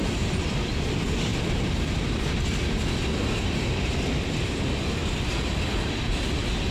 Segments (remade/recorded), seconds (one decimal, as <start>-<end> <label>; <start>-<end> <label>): 0.0-1.3 recorded; 1.3-2.4 remade; 2.4-6.7 recorded